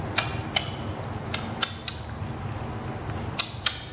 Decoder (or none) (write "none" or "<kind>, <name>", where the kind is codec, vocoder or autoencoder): none